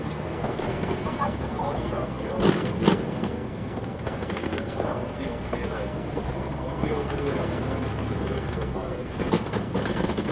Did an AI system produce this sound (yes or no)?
yes